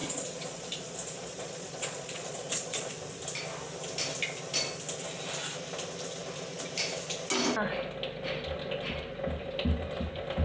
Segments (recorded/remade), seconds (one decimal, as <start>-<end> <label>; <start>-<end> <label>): 0.0-2.9 remade; 2.9-10.4 recorded